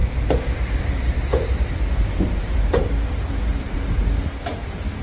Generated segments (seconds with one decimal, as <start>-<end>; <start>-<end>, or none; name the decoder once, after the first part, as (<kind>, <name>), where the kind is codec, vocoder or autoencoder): 1.3-3.8 (vocoder, BigVGAN v2)